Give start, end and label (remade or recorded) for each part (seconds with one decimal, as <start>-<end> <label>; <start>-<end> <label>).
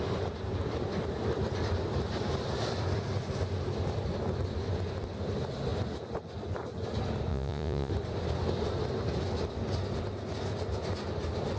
0.0-7.3 recorded; 7.3-7.9 remade; 7.9-11.6 recorded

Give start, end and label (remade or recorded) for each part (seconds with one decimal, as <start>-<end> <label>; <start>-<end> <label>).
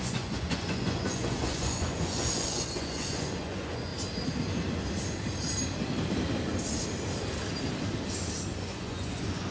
0.0-3.9 remade; 3.9-8.6 recorded; 8.6-9.5 remade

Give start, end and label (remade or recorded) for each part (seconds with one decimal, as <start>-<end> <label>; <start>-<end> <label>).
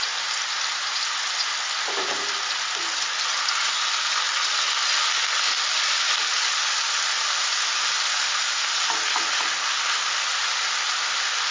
0.0-11.5 recorded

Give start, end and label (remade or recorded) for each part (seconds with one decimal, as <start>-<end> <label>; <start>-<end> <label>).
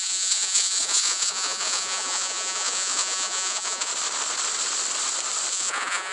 0.0-3.9 remade; 3.9-5.5 recorded; 5.5-6.1 remade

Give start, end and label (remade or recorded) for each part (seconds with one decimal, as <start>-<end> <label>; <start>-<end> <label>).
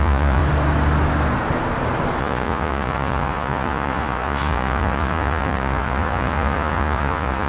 0.0-0.4 remade; 0.4-2.2 recorded; 2.2-7.5 remade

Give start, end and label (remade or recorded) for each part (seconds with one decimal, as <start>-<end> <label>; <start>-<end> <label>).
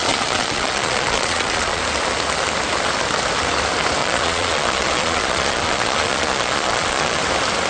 0.0-1.8 remade; 1.8-4.0 recorded; 4.0-7.2 remade; 7.2-7.7 recorded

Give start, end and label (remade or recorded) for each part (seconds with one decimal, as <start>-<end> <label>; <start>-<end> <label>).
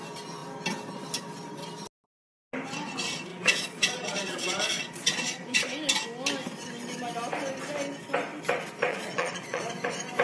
0.0-3.3 recorded; 3.3-5.6 remade; 5.6-8.9 recorded; 8.9-9.6 remade; 9.6-10.2 recorded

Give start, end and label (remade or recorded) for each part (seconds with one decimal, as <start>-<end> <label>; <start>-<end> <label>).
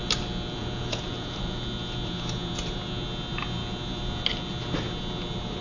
0.0-0.6 recorded; 0.6-1.6 remade; 1.6-5.6 recorded